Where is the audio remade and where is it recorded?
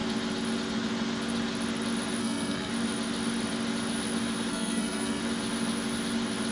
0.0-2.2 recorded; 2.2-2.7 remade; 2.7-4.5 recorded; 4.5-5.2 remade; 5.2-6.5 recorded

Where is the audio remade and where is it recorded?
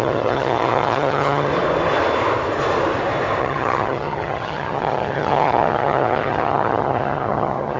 0.0-1.5 remade; 1.5-3.4 recorded; 3.4-7.8 remade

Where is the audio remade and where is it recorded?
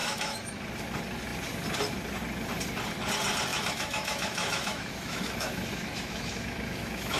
0.0-0.6 remade; 0.6-3.5 recorded; 3.5-7.2 remade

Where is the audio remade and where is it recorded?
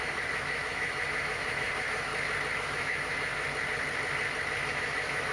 0.0-2.1 remade; 2.1-2.6 recorded; 2.6-3.3 remade; 3.3-4.7 recorded; 4.7-5.3 remade